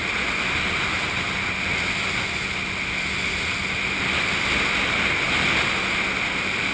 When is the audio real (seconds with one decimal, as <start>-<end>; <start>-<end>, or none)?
0.0-6.7